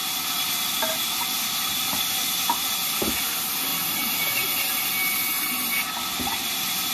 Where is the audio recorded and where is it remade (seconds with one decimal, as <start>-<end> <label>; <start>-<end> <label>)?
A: 0.0-6.9 recorded